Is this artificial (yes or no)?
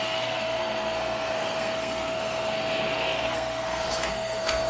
yes